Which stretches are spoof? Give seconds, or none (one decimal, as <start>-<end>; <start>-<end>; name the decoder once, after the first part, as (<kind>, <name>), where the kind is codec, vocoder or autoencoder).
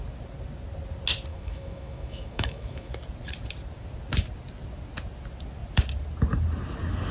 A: 1.3-2.9 (autoencoder, DAC-VAE)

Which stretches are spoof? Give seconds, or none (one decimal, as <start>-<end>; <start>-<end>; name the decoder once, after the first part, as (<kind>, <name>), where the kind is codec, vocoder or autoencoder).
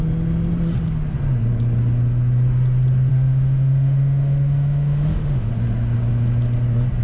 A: 3.1-5.5 (autoencoder, DAC-VAE)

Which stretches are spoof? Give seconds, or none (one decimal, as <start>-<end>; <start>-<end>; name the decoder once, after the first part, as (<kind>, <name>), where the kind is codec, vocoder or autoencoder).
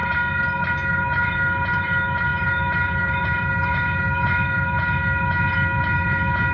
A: 0.7-6.5 (autoencoder, DAC-VAE)